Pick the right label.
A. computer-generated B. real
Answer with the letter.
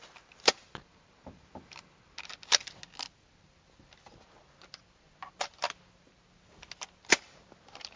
B